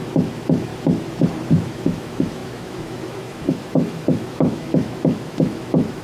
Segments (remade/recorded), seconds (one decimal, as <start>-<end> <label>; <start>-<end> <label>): 0.0-0.7 remade; 0.7-1.5 recorded; 1.5-6.0 remade

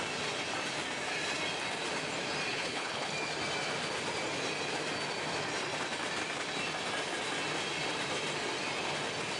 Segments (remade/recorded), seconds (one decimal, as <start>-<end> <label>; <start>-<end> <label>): 0.0-2.5 recorded; 2.5-3.1 remade; 3.1-9.4 recorded

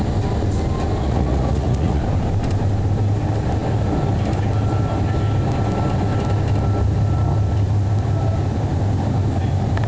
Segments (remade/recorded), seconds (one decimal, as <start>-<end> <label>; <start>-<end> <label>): 0.0-1.0 recorded; 1.0-2.0 remade; 2.0-9.9 recorded

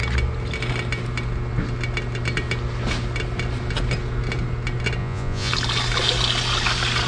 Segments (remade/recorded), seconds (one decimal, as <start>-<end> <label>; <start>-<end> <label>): 0.0-5.0 recorded; 5.0-5.5 remade; 5.5-7.1 recorded

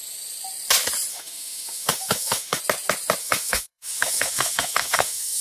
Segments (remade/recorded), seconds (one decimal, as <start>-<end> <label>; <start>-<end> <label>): 0.0-1.1 recorded; 1.1-2.6 remade; 2.6-3.2 recorded; 3.2-5.4 remade

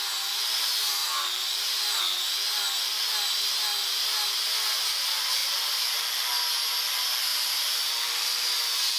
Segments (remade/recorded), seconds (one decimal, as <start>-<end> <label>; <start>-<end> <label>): 0.0-1.0 recorded; 1.0-2.0 remade; 2.0-3.7 recorded; 3.7-4.3 remade; 4.3-5.4 recorded; 5.4-6.0 remade; 6.0-7.3 recorded; 7.3-7.9 remade; 7.9-9.0 recorded